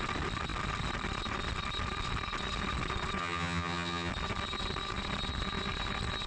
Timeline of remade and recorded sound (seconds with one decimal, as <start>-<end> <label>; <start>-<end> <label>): 0.0-3.2 recorded; 3.2-4.1 remade; 4.1-6.3 recorded

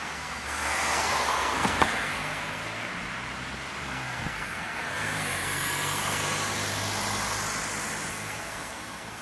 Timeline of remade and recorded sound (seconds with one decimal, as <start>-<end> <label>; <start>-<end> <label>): 0.0-2.9 remade; 2.9-3.8 recorded; 3.8-6.2 remade; 6.2-8.1 recorded; 8.1-9.2 remade

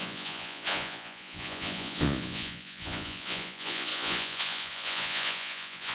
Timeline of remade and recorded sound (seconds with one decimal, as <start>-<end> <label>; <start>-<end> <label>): 0.0-5.9 remade

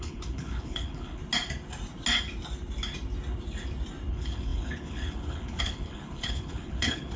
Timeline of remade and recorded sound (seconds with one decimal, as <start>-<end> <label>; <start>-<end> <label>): 0.0-1.2 remade; 1.2-4.1 recorded; 4.1-7.2 remade

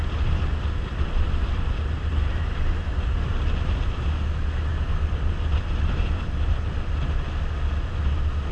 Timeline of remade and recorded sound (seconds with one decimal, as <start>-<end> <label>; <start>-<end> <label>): 0.0-0.5 recorded; 0.5-3.4 remade; 3.4-4.7 recorded; 4.7-6.2 remade; 6.2-8.5 recorded